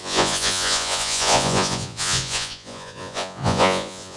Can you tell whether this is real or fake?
fake